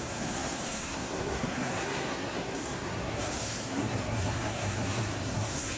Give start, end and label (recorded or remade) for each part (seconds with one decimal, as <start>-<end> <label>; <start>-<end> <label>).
0.0-5.8 remade